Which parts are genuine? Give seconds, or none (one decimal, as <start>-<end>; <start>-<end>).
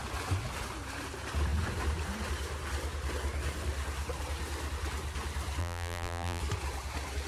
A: 0.0-5.6; 6.4-7.3